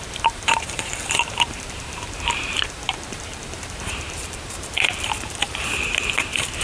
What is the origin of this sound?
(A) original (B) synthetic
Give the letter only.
B